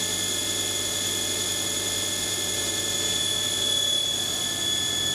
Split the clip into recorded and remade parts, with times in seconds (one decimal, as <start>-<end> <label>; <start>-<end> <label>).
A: 0.0-5.1 recorded